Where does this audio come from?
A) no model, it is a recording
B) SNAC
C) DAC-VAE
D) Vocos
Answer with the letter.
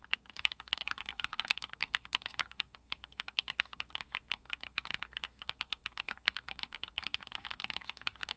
B